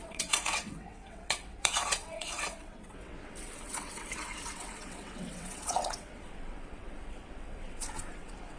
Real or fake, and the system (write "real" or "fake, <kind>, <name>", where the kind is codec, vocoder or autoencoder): fake, vocoder, WaveNeXt